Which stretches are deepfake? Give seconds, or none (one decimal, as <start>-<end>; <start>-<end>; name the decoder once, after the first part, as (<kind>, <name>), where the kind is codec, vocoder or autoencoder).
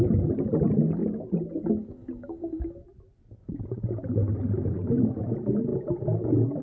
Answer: none